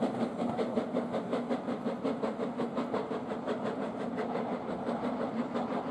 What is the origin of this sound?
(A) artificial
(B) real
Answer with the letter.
B